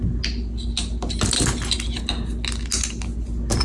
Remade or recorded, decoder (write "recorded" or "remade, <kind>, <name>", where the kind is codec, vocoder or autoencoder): recorded